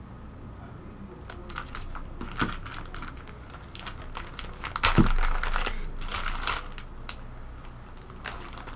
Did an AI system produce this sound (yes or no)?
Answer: no